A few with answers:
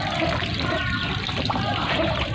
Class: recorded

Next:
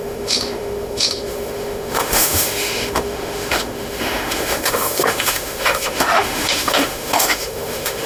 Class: remade